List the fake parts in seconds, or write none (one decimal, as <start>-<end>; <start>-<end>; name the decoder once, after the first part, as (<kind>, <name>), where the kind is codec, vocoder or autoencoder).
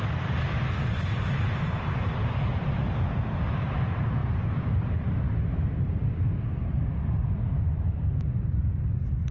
0.0-9.3 (vocoder, BigVGAN v2)